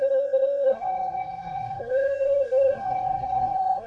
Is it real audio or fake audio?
fake